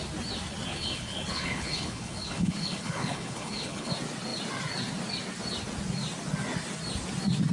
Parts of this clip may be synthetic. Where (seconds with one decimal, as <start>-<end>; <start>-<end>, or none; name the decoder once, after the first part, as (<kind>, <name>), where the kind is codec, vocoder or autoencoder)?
0.7-3.9 (codec, HILCodec)